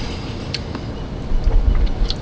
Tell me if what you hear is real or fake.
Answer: real